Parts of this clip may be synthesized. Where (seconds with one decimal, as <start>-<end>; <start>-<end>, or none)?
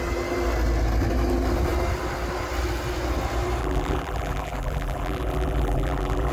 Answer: 3.6-6.3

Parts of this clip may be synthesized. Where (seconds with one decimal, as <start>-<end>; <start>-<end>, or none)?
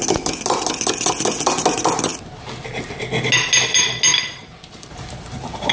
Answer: 4.4-5.7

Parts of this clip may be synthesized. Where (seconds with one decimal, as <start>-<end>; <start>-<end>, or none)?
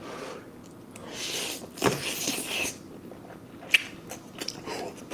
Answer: none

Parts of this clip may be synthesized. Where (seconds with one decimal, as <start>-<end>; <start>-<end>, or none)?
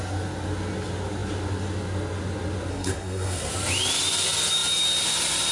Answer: 2.7-3.5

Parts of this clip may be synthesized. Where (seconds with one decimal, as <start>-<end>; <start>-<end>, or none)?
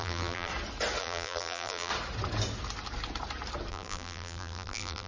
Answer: 0.0-0.5; 1.0-1.9; 3.7-5.1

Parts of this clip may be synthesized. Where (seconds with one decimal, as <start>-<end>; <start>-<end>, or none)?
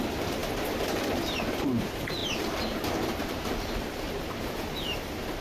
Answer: 0.0-5.4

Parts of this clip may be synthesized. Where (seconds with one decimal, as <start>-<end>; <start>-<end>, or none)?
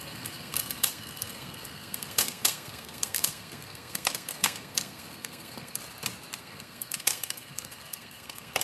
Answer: 0.0-5.8; 6.4-8.6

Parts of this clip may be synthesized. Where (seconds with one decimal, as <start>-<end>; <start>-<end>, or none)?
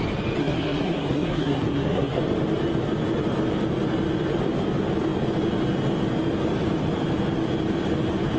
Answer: 0.4-2.2